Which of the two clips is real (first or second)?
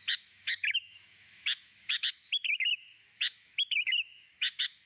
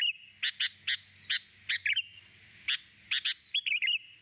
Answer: second